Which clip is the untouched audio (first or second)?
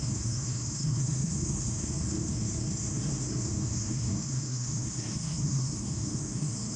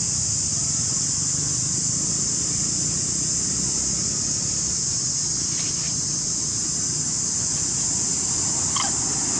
second